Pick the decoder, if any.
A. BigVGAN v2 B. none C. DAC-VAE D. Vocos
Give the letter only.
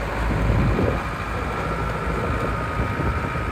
B